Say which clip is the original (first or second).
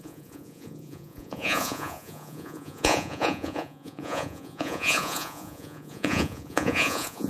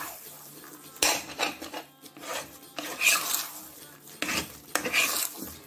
second